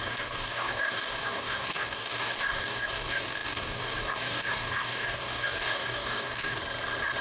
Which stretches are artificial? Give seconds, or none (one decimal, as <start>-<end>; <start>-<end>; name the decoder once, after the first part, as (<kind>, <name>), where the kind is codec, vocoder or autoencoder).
0.0-6.6 (codec, DAC)